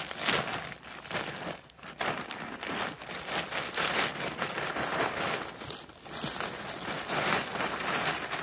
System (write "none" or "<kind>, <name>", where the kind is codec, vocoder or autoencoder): none